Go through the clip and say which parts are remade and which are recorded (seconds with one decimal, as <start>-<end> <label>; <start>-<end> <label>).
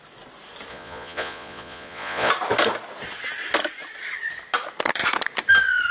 0.0-0.7 recorded; 0.7-2.3 remade; 2.3-5.9 recorded